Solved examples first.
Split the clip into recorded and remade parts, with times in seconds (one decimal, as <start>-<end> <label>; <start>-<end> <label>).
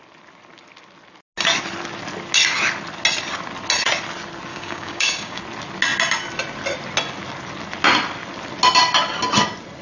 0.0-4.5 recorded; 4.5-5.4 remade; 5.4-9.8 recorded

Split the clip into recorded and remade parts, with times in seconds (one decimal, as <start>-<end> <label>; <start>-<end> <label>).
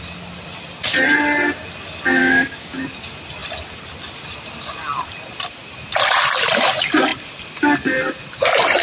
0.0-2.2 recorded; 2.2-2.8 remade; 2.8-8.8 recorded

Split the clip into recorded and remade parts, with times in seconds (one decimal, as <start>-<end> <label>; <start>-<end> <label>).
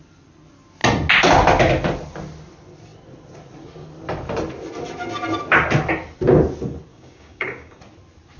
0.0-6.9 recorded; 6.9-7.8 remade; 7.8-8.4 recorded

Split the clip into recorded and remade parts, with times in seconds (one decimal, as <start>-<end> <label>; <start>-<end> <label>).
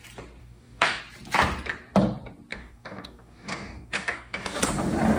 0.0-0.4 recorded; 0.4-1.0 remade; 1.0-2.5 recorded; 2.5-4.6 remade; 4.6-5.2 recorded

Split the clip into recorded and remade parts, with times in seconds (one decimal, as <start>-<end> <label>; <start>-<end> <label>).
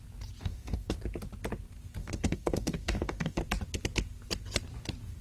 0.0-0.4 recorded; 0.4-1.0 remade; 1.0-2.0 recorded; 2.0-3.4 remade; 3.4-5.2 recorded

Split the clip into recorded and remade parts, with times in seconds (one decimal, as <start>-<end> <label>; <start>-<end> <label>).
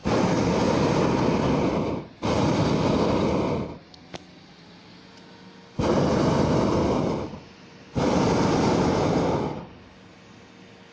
0.0-10.9 recorded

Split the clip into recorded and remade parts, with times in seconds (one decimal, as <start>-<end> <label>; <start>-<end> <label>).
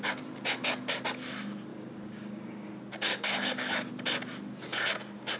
0.0-1.7 recorded; 1.7-2.7 remade; 2.7-3.1 recorded; 3.1-3.9 remade; 3.9-5.4 recorded